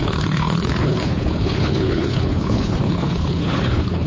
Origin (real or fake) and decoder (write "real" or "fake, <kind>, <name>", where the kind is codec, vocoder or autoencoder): fake, codec, HILCodec